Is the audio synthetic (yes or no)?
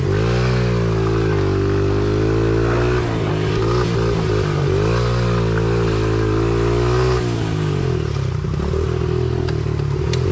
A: no